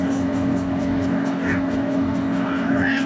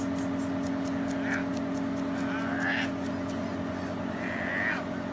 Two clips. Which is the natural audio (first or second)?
second